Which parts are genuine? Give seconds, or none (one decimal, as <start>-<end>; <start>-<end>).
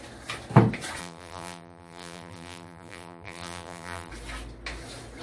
0.0-1.0; 4.1-5.2